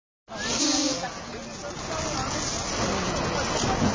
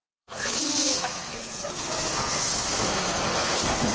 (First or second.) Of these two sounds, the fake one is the second